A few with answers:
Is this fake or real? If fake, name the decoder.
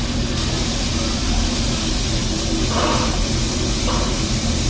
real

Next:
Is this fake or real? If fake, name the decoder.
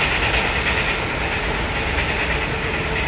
real